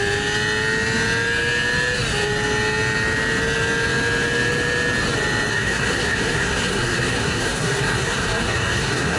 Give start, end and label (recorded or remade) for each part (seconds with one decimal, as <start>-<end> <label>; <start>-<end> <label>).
0.0-5.5 recorded; 5.5-9.2 remade